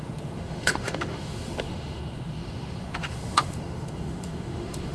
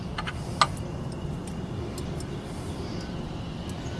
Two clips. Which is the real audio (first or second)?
second